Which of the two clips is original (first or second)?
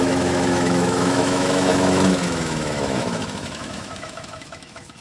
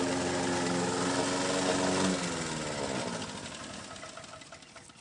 second